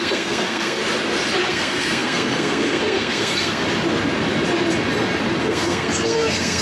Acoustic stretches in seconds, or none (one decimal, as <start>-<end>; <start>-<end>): 0.8-1.5; 3.6-5.4